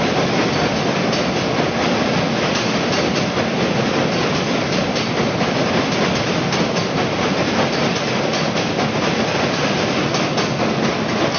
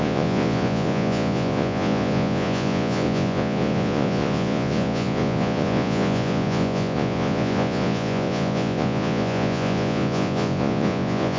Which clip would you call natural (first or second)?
first